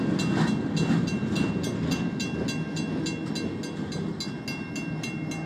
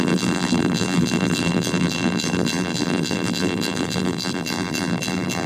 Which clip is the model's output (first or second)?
second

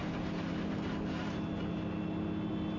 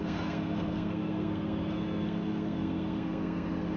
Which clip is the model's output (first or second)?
second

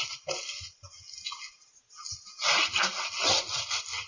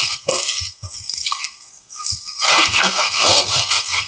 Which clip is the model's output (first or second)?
second